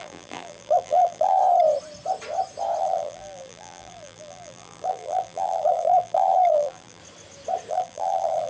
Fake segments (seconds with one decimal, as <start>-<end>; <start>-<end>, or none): 0.0-1.4; 2.8-7.0; 7.7-8.5